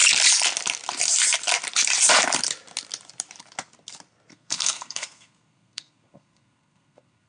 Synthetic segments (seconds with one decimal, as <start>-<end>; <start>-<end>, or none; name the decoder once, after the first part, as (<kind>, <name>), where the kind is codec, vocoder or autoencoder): 4.3-7.3 (codec, SNAC)